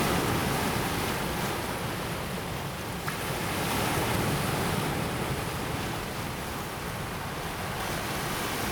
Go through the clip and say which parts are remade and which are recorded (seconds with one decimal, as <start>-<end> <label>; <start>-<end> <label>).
0.0-8.7 recorded